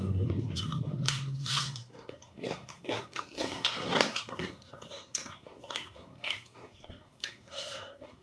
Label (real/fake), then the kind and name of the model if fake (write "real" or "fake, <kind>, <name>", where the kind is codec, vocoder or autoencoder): fake, codec, SNAC